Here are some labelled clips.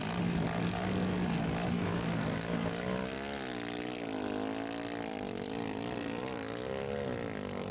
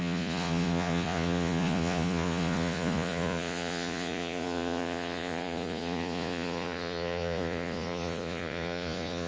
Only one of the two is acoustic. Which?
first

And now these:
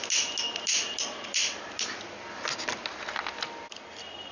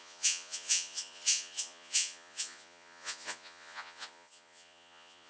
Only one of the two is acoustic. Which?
first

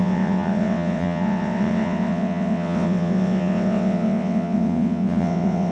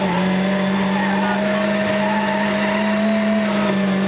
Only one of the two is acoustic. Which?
second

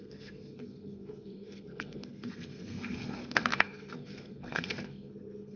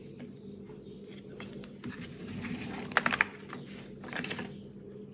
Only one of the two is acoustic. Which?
second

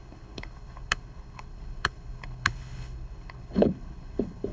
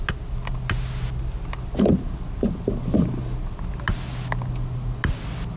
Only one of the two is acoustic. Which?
second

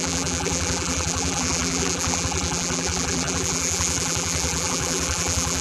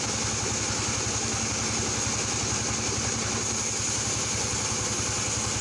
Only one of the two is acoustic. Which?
second